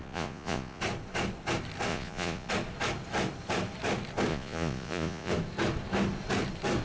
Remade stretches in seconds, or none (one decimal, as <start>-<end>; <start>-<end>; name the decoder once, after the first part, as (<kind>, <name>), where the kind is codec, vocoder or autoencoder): 0.0-0.8 (vocoder, Vocos); 1.9-2.5; 4.3-5.3

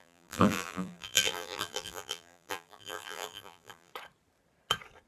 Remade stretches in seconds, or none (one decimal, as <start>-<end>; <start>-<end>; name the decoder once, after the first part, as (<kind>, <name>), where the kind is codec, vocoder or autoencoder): 0.0-3.9 (vocoder, BigVGAN v2)

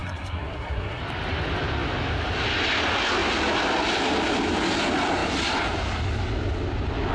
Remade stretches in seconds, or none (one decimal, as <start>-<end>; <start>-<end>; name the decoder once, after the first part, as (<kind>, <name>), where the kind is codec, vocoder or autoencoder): 0.0-1.0 (codec, SNAC)